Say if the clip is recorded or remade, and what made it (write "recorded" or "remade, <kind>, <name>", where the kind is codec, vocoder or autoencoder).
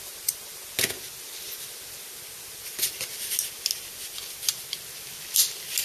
recorded